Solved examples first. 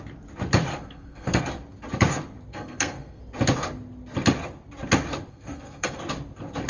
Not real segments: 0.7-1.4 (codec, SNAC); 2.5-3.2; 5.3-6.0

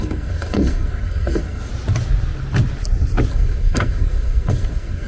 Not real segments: 0.0-1.7 (codec, SNAC); 3.3-5.1

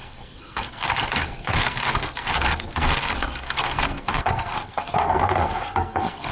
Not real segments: 0.0-6.3 (codec, SNAC)

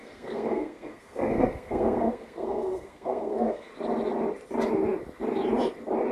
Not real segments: 0.0-3.7 (codec, SNAC)

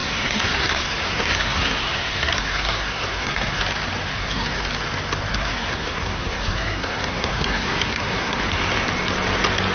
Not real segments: 0.0-3.6 (codec, SNAC); 4.1-4.6; 5.3-8.4